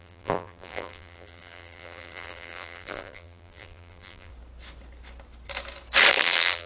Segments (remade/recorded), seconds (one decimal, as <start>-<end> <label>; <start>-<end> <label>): 0.0-4.3 remade; 4.3-6.1 recorded; 6.1-6.7 remade